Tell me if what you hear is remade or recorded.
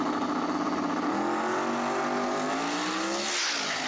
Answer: recorded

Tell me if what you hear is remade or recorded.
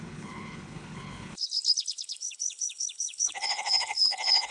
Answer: remade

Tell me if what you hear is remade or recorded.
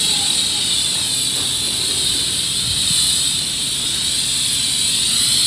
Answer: recorded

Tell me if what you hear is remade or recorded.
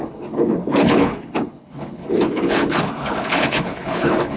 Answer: remade